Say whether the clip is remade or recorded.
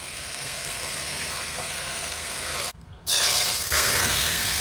remade